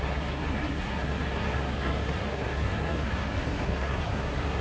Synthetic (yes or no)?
yes